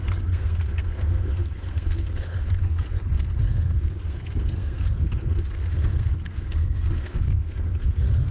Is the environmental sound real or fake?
fake